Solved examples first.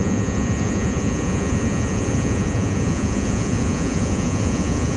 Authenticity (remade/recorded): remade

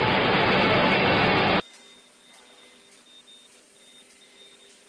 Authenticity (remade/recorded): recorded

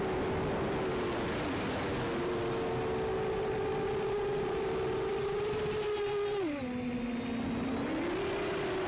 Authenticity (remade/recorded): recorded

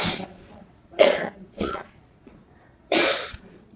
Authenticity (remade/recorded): remade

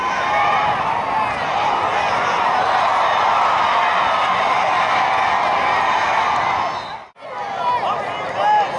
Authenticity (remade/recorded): recorded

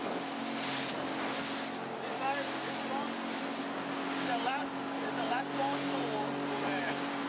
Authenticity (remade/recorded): recorded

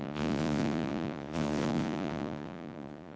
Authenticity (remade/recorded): remade